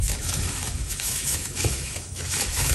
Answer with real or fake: fake